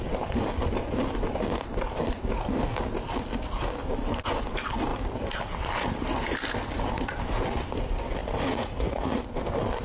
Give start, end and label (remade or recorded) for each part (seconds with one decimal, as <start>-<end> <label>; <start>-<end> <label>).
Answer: 0.0-8.2 recorded; 8.2-9.2 remade; 9.2-9.8 recorded